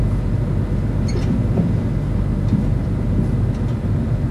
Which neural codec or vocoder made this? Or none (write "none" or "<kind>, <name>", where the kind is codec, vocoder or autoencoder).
none